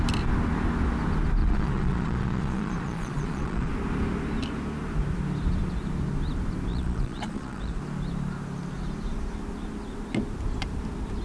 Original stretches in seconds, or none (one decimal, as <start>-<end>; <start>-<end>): 0.0-1.4; 3.7-6.7; 7.8-11.2